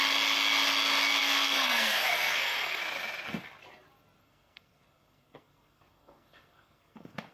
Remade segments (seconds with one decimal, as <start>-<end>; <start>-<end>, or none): 1.2-2.8; 4.2-7.3